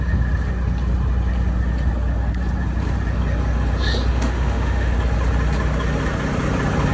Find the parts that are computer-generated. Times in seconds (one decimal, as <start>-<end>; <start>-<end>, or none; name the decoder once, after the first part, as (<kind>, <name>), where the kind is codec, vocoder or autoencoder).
4.1-4.9 (autoencoder, DAC-VAE)